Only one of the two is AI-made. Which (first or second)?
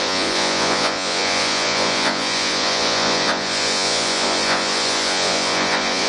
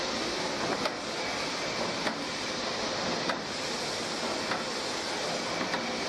first